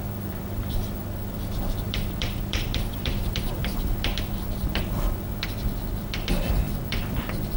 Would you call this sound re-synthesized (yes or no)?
yes